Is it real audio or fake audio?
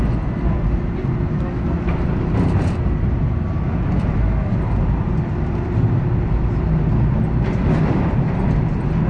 real